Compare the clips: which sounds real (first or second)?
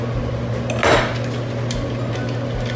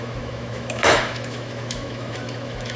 first